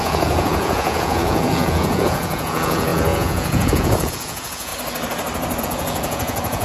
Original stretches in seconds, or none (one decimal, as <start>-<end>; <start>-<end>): 4.7-5.6